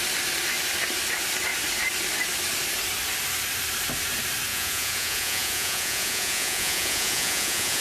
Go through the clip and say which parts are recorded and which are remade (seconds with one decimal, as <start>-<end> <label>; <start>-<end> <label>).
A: 0.0-4.5 recorded; 4.5-7.8 remade